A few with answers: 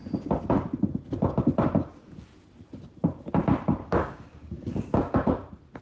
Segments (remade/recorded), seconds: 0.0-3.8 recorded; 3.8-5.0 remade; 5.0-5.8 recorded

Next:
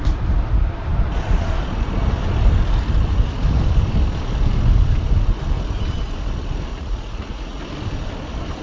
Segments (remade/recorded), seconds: 0.0-6.7 recorded; 6.7-7.6 remade; 7.6-8.6 recorded

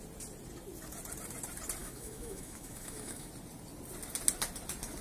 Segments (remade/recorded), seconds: 0.0-1.8 recorded; 1.8-3.3 remade; 3.3-5.0 recorded

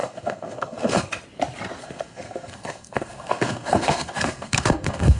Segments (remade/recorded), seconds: 0.0-1.1 remade; 1.1-1.8 recorded; 1.8-5.2 remade